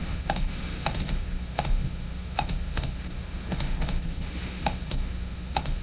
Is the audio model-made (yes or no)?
yes